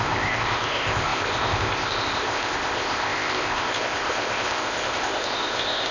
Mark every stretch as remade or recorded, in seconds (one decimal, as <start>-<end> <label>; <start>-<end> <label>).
0.0-5.9 remade